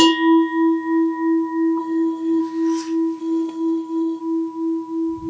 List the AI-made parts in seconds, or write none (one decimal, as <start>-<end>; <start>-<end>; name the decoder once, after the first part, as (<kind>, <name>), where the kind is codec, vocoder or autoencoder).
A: 1.8-2.4 (codec, SNAC); 3.2-4.2